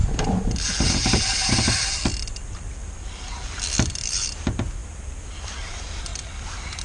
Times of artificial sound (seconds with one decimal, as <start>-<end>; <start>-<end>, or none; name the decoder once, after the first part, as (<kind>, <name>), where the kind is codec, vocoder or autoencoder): 0.8-4.8 (vocoder, BigVGAN v2); 5.4-6.8